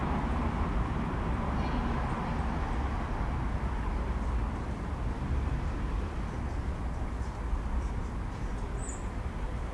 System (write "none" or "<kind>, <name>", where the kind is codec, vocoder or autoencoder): none